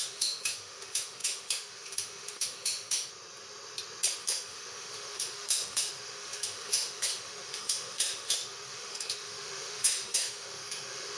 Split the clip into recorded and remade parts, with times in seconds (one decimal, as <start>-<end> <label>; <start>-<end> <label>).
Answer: 0.0-3.1 remade; 3.1-4.2 recorded; 4.2-11.2 remade